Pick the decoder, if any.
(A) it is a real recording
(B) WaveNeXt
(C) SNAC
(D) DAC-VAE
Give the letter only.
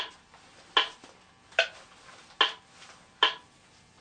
A